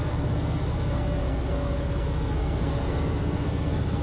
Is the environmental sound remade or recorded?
remade